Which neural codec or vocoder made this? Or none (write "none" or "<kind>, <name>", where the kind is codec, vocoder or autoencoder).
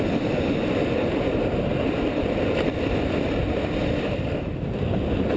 none